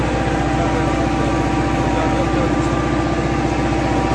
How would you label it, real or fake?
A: real